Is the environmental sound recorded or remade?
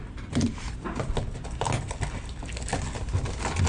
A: recorded